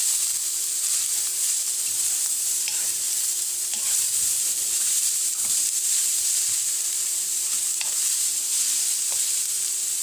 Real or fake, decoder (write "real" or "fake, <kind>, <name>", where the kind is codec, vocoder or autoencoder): fake, vocoder, BigVGAN v2